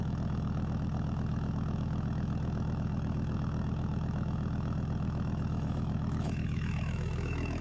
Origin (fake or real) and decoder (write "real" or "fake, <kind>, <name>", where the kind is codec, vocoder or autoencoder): fake, autoencoder, DAC-VAE